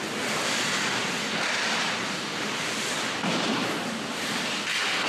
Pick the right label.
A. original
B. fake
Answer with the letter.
A